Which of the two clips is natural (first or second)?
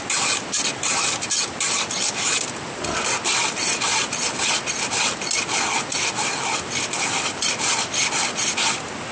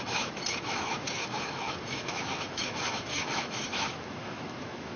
first